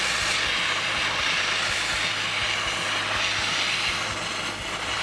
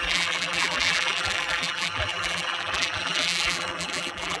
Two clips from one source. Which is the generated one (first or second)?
second